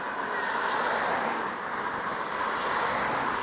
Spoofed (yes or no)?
no